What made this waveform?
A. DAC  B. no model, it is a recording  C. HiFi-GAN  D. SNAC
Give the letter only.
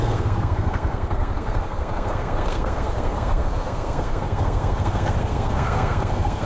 D